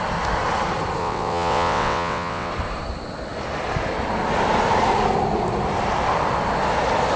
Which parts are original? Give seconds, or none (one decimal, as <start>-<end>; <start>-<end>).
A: 0.0-1.0; 2.5-7.2